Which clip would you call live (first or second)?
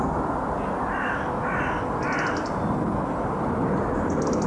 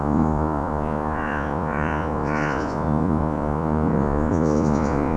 first